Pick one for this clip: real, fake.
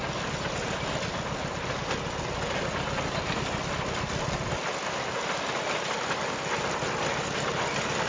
real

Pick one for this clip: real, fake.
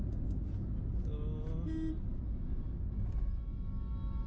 real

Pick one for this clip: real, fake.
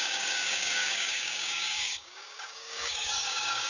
fake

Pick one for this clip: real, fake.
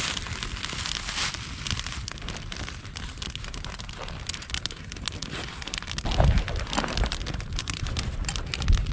real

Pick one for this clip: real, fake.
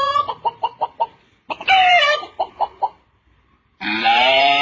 fake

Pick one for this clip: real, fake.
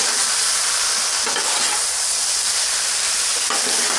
real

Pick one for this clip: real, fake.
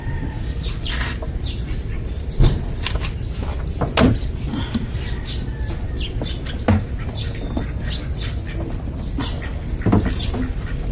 real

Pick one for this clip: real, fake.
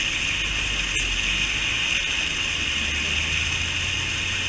real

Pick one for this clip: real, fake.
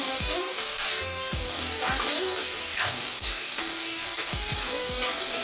fake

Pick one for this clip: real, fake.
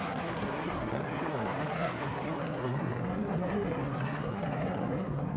fake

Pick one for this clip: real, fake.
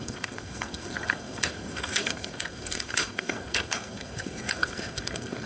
fake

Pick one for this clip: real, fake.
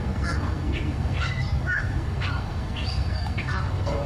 fake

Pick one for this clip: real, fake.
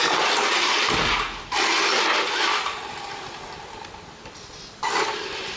real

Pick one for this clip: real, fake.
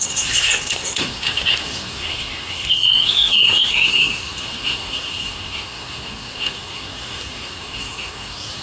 fake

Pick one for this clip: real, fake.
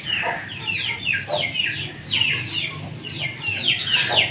real